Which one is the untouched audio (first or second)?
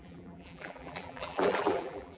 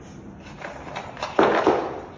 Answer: second